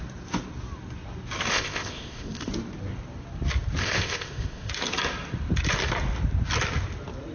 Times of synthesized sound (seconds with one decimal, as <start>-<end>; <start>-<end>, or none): 1.5-2.5; 3.8-4.7